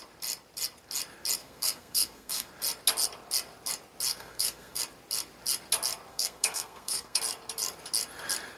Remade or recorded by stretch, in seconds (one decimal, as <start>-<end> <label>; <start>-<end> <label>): 0.0-1.4 recorded; 1.4-2.5 remade; 2.5-4.1 recorded; 4.1-4.8 remade; 4.8-6.1 recorded; 6.1-7.2 remade; 7.2-8.6 recorded